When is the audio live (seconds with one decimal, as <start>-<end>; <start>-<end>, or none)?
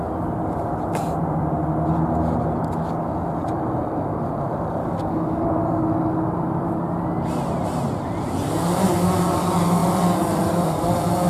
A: 0.0-4.8; 5.4-11.3